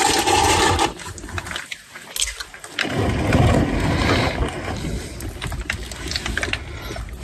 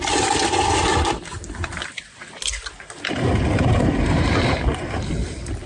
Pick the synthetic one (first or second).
second